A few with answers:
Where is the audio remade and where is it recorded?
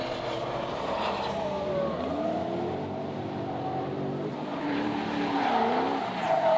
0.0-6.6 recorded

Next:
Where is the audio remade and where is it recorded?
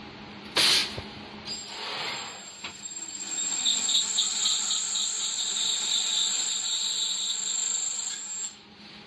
0.0-9.1 recorded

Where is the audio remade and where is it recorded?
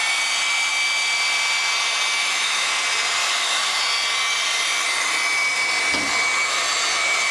0.0-2.2 recorded; 2.2-2.7 remade; 2.7-3.2 recorded; 3.2-3.8 remade; 3.8-7.3 recorded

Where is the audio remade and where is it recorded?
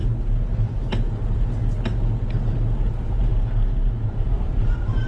0.0-2.9 recorded; 2.9-3.3 remade; 3.3-4.1 recorded; 4.1-5.1 remade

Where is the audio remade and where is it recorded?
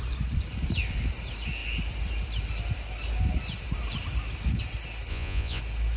0.0-5.1 recorded; 5.1-5.6 remade; 5.6-6.0 recorded